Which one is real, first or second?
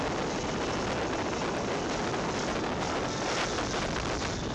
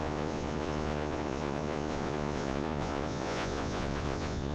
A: first